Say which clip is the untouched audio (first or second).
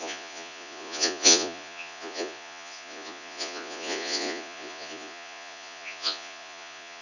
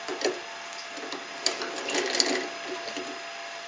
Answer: second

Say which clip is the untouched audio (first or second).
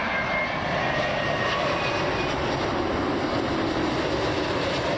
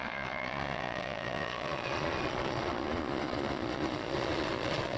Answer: first